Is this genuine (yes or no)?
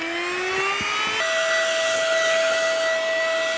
yes